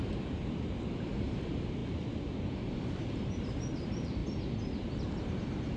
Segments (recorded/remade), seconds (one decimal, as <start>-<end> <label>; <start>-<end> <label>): 0.0-1.8 remade; 1.8-3.2 recorded; 3.2-4.2 remade; 4.2-5.2 recorded; 5.2-5.8 remade